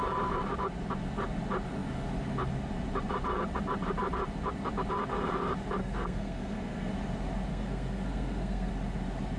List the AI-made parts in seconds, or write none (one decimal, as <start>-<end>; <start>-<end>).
5.8-6.9; 7.5-8.7